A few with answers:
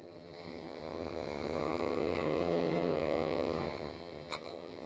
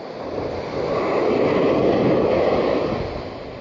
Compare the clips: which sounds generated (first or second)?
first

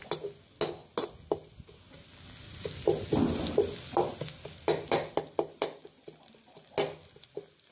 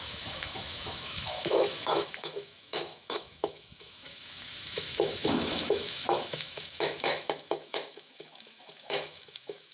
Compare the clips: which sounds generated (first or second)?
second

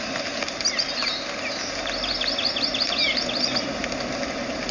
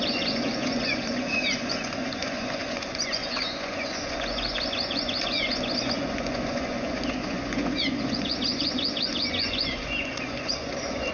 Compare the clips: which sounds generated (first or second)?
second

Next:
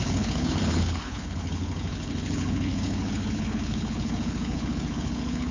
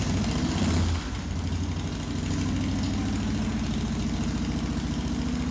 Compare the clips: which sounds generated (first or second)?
first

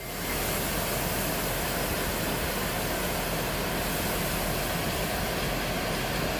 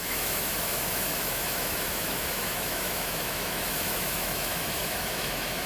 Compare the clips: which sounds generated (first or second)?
second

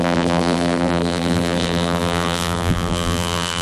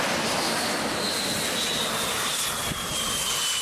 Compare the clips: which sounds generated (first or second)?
first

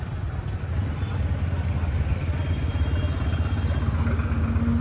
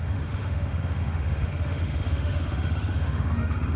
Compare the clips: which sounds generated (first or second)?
second